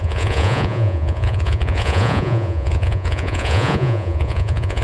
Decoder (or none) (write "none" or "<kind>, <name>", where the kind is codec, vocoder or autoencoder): vocoder, Vocos